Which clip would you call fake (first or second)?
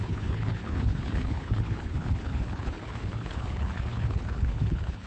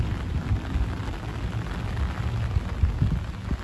first